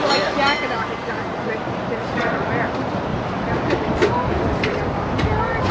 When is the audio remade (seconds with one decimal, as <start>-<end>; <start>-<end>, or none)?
1.0-1.5; 2.0-2.5